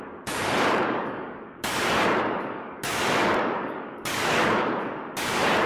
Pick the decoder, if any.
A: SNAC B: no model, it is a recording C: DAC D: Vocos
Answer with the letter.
C